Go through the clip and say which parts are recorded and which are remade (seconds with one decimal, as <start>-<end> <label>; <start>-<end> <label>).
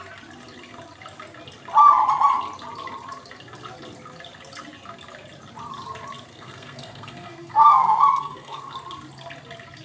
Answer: 0.0-6.3 recorded; 6.3-8.7 remade; 8.7-9.8 recorded